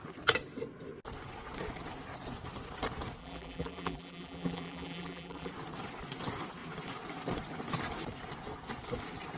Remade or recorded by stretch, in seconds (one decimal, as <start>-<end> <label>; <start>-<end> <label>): 0.0-3.2 recorded; 3.2-5.5 remade; 5.5-9.4 recorded